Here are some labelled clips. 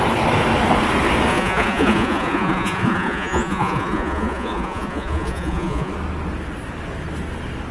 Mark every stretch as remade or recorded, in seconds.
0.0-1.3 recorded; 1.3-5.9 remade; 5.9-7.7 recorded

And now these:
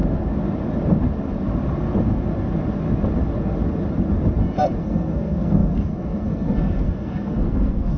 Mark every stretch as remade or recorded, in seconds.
0.0-4.8 recorded; 4.8-8.0 remade